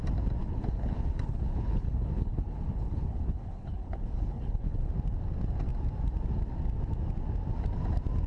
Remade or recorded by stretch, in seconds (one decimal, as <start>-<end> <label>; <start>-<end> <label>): 0.0-0.4 recorded; 0.4-4.9 remade; 4.9-8.3 recorded

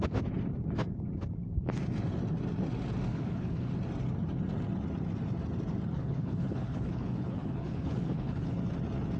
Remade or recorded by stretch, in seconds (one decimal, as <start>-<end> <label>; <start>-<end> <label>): 0.0-3.1 recorded; 3.1-3.7 remade; 3.7-5.9 recorded; 5.9-8.6 remade; 8.6-9.2 recorded

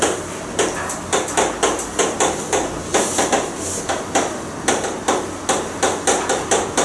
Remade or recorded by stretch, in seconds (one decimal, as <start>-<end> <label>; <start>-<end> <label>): 0.0-6.8 recorded

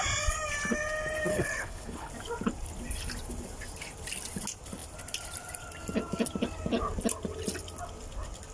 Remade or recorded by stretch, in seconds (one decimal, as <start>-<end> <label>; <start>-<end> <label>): 0.0-1.3 recorded; 1.3-2.1 remade; 2.1-8.5 recorded

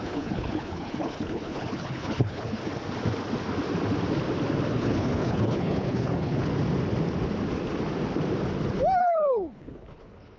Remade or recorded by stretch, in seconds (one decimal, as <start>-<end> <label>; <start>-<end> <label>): 0.0-2.6 remade; 2.6-4.7 recorded; 4.7-6.5 remade; 6.5-9.0 recorded; 9.0-10.4 remade